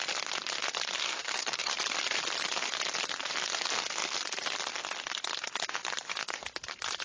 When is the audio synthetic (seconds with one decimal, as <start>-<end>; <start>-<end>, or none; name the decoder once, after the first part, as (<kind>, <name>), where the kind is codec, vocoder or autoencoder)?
1.0-1.7 (codec, SNAC)